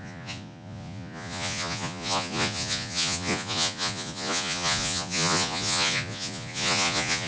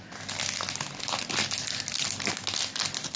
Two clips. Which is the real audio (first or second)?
second